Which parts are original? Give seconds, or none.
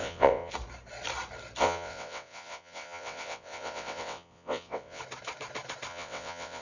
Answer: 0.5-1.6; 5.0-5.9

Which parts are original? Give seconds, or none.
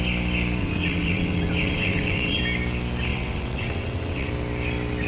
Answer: 0.0-0.6; 2.4-3.1; 4.3-5.1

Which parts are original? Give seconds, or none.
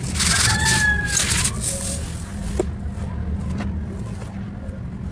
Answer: 0.0-5.1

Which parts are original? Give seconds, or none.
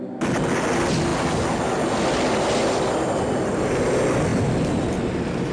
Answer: 0.0-5.5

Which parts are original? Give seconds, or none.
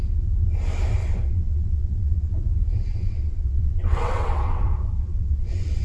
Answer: 0.0-1.0; 2.3-2.9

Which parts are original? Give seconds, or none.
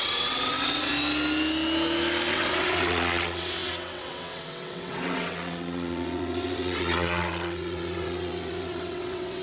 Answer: 0.9-2.3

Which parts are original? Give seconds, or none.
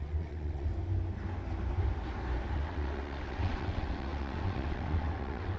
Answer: 0.7-2.5